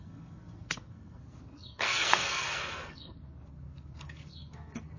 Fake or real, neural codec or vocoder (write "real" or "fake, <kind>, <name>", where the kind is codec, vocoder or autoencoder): fake, codec, SNAC